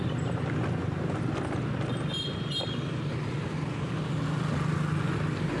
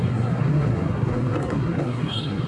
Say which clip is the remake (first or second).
second